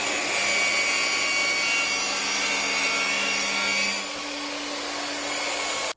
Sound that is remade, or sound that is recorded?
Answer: recorded